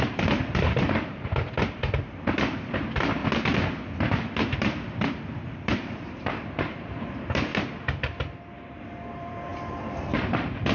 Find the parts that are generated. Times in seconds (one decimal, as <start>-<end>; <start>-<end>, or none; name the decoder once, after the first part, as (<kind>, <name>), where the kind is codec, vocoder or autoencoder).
0.0-3.2 (vocoder, BigVGAN v2); 4.4-7.5; 9.1-10.7